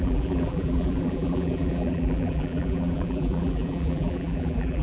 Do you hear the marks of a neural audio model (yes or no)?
yes